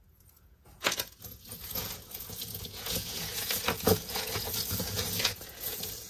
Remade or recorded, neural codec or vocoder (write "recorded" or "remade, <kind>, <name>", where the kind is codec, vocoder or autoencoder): remade, vocoder, Vocos